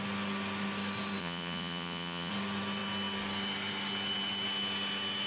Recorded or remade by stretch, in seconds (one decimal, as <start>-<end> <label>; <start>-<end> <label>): 0.0-1.2 recorded; 1.2-2.3 remade; 2.3-5.3 recorded